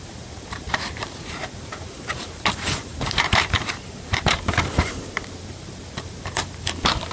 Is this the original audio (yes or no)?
no